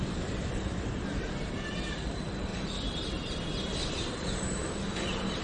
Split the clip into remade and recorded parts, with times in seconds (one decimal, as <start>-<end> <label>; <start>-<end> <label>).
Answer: 0.0-2.5 remade; 2.5-3.9 recorded; 3.9-5.4 remade